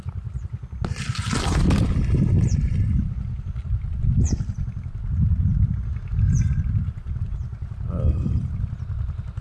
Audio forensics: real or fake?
real